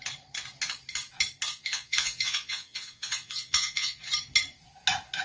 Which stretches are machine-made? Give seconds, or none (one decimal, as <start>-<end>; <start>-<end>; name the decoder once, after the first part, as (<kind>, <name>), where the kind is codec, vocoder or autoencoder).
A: 1.5-4.1 (vocoder, Vocos)